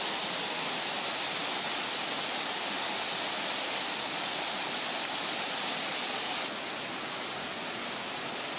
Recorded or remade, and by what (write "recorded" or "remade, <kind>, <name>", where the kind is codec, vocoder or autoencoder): recorded